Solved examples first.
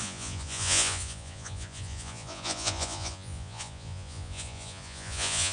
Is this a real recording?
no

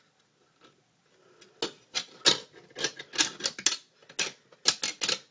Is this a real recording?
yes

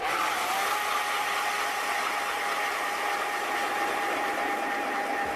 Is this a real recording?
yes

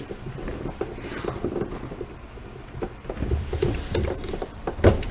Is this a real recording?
no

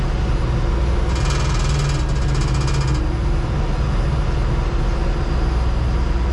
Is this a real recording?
yes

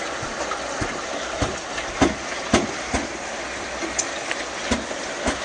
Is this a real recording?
yes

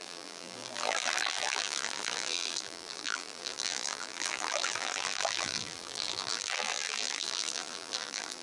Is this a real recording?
no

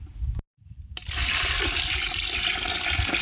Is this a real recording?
yes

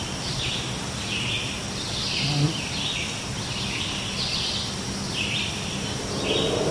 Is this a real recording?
no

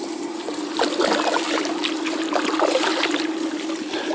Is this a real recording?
yes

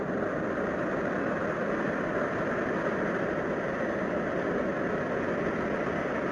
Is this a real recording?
yes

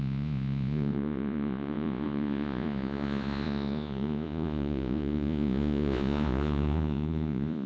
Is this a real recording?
no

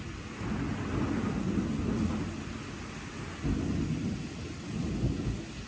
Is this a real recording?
yes